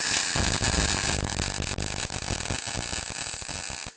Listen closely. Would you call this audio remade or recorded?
recorded